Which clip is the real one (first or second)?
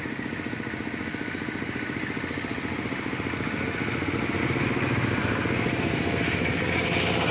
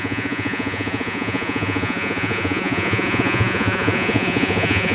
first